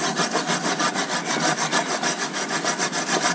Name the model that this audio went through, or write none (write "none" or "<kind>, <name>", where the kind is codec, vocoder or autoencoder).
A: none